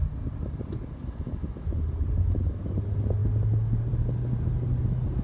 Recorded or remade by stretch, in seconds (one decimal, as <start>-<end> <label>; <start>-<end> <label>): 0.0-5.2 recorded